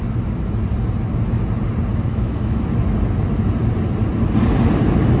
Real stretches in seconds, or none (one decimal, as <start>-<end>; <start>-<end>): 0.0-2.1; 2.6-5.2